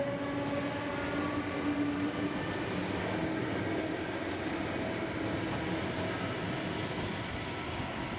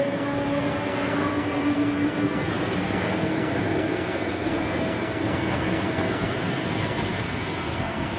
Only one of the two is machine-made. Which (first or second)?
second